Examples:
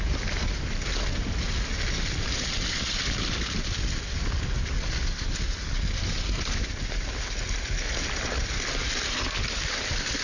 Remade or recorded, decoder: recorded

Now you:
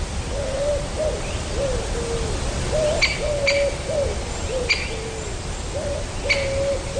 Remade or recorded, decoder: recorded